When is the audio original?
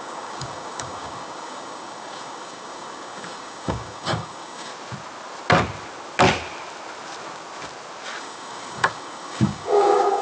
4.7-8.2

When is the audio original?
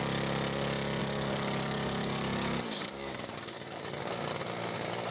0.0-1.0; 4.1-5.1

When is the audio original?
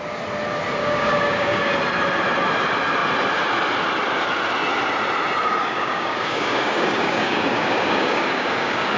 0.0-0.8; 1.7-5.6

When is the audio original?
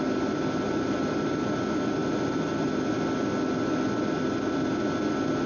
0.0-5.5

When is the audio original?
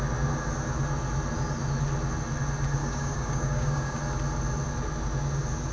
0.0-2.8; 4.0-5.7